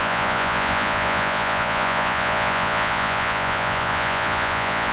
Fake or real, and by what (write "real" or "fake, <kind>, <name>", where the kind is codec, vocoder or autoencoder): fake, vocoder, Vocos